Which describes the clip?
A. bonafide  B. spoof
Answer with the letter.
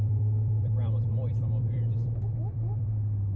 B